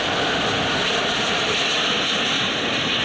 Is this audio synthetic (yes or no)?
no